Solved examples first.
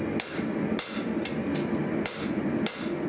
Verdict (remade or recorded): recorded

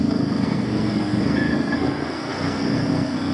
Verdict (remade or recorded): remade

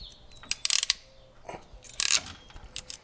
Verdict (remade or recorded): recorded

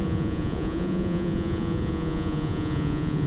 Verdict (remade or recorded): remade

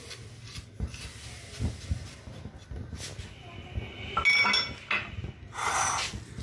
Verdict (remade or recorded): recorded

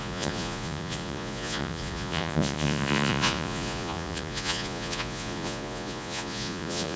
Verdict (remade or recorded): remade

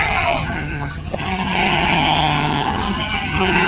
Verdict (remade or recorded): remade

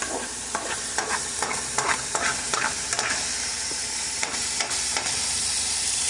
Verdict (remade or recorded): remade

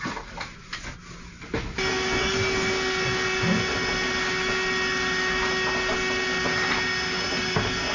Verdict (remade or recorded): recorded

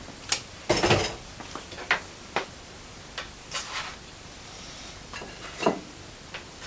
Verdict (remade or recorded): recorded